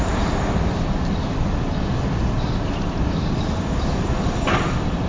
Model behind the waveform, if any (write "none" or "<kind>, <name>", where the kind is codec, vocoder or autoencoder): none